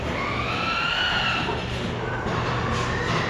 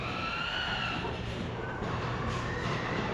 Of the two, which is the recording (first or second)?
first